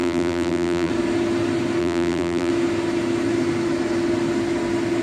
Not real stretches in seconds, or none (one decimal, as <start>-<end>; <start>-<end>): 0.0-0.9; 1.8-2.5